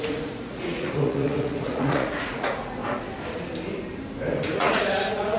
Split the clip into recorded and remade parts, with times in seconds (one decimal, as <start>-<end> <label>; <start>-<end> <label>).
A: 0.0-2.8 remade; 2.8-4.5 recorded; 4.5-5.4 remade